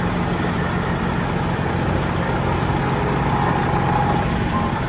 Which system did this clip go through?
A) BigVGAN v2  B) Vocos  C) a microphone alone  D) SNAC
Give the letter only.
C